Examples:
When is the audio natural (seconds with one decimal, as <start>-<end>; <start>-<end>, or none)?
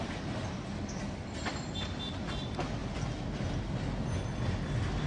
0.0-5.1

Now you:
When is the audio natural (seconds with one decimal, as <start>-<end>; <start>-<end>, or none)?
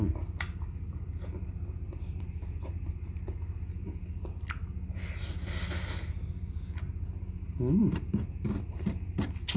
0.0-9.6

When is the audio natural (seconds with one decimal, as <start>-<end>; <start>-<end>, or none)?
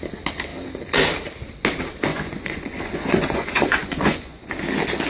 0.0-2.1; 4.5-5.1